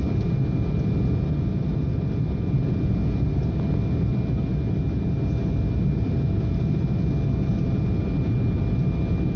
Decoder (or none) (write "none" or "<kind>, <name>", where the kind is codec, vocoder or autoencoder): none